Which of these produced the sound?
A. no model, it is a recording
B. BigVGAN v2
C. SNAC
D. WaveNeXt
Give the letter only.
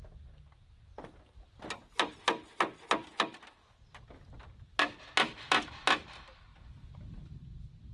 A